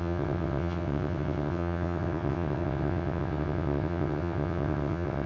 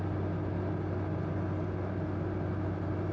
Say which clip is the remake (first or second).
first